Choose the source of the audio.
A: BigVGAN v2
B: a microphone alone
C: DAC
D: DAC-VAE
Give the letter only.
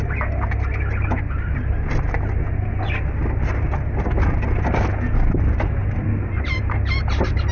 B